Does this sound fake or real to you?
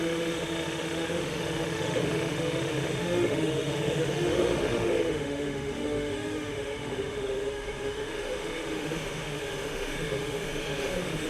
fake